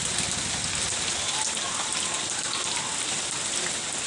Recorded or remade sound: recorded